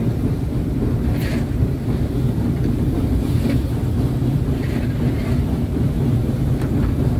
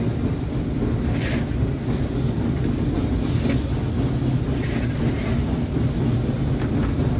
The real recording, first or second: second